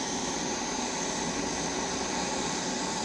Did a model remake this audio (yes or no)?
no